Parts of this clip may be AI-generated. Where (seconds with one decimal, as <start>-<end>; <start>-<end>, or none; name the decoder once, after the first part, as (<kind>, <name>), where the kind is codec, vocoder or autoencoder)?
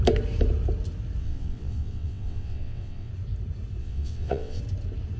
1.2-3.1 (vocoder, WaveNeXt); 3.8-4.6